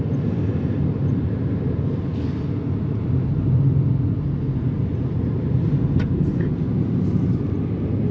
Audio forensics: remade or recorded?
recorded